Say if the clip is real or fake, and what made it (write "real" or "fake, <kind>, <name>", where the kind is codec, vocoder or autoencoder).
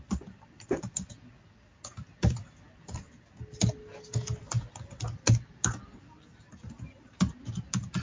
real